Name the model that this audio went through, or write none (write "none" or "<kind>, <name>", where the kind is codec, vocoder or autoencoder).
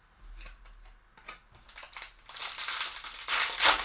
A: none